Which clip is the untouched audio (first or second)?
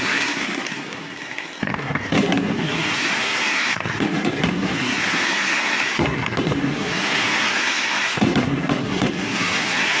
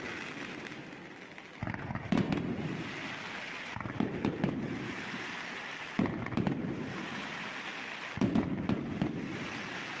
second